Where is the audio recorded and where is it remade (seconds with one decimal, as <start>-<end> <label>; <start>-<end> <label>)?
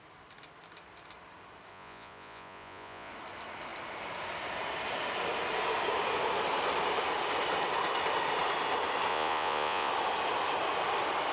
0.0-1.7 recorded; 1.7-3.1 remade; 3.1-9.1 recorded; 9.1-9.9 remade; 9.9-11.3 recorded